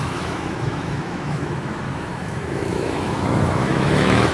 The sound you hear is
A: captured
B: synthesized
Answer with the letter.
B